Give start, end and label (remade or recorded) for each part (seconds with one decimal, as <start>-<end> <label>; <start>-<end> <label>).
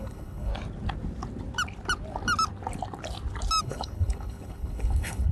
0.0-0.5 remade; 0.5-3.6 recorded; 3.6-5.3 remade